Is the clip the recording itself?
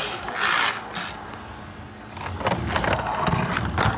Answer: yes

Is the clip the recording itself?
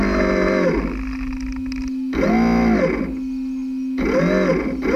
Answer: yes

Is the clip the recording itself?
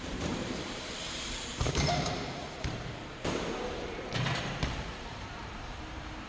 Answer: no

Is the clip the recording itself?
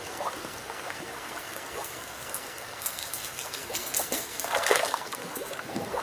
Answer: no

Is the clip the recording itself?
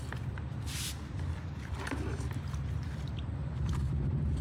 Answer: no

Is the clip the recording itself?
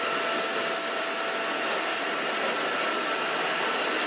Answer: yes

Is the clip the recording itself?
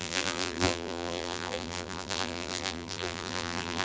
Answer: no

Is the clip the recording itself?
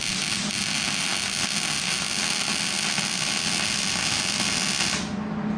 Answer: yes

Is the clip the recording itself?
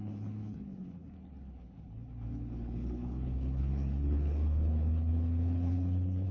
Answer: no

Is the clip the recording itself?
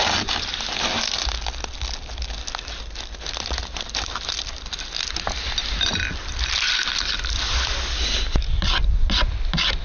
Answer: yes